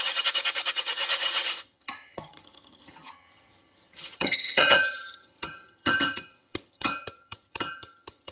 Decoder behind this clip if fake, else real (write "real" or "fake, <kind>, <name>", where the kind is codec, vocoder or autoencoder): fake, vocoder, HiFi-GAN